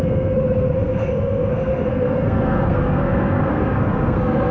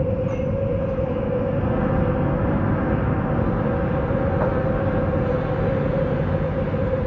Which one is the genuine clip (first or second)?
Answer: second